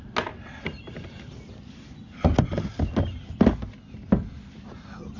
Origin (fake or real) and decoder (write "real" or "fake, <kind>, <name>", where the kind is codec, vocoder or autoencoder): real